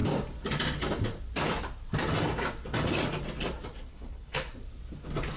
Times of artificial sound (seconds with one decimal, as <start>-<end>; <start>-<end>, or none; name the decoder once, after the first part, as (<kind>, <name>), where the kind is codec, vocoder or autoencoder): 3.9-4.5 (codec, HILCodec)

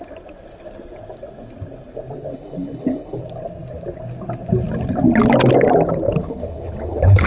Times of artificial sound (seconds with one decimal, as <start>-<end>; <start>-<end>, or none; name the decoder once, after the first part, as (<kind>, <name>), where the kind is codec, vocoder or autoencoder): 2.3-3.2 (codec, HILCodec); 6.2-7.3

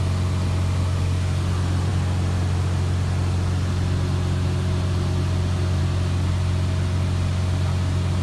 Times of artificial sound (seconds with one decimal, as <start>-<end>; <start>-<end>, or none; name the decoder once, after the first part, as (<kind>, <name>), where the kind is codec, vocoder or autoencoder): none